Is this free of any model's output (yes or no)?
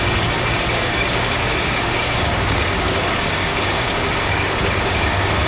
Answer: no